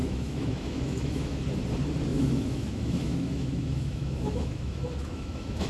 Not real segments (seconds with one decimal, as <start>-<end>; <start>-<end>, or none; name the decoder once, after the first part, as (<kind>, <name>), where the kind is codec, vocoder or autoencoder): 0.0-1.4 (autoencoder, DAC-VAE); 2.1-5.7